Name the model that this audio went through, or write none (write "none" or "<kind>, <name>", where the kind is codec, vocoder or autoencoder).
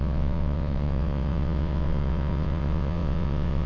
vocoder, WaveNeXt